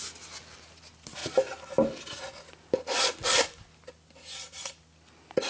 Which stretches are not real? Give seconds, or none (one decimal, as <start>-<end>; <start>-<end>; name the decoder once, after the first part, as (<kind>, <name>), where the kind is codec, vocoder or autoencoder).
none